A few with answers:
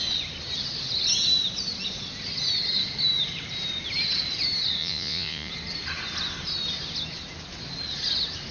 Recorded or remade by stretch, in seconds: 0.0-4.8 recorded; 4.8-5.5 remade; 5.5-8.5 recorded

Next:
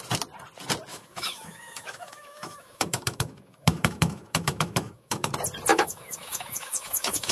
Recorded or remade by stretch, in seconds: 0.0-0.9 recorded; 0.9-5.3 remade; 5.3-5.7 recorded; 5.7-7.3 remade

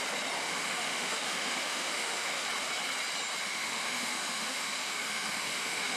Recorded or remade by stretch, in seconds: 0.0-0.4 recorded; 0.4-2.5 remade; 2.5-3.4 recorded; 3.4-6.0 remade